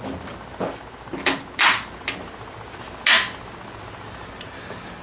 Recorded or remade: recorded